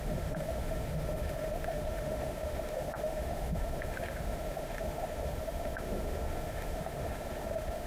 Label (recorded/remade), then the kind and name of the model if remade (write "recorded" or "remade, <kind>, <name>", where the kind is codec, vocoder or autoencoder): remade, autoencoder, DAC-VAE